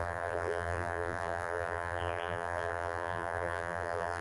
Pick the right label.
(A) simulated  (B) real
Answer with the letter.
A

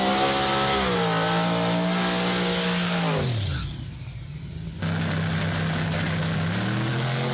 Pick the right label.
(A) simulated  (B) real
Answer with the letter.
B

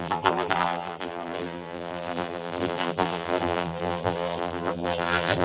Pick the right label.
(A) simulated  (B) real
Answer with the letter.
A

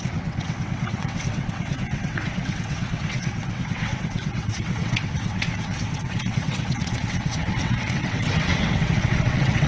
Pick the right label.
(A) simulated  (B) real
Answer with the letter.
A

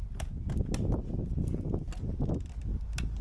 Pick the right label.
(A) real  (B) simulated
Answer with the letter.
A